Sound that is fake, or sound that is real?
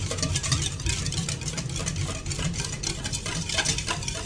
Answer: real